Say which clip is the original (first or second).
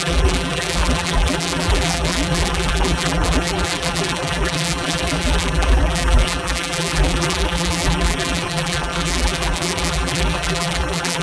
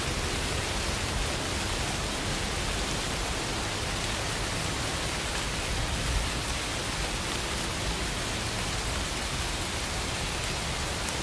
second